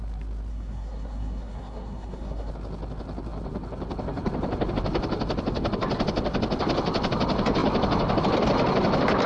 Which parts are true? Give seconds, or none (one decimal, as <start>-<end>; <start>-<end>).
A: 0.0-0.5; 2.5-9.3